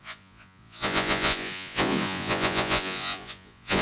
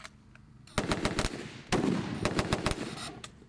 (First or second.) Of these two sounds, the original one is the second